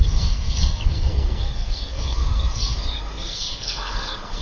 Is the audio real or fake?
fake